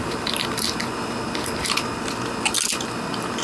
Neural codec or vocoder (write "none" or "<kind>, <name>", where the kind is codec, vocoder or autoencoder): none